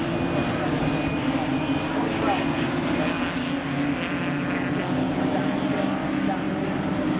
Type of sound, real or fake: real